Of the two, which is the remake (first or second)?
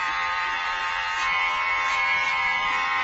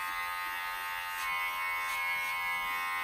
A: first